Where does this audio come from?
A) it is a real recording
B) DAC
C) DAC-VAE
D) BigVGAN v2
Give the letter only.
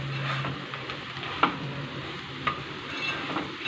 A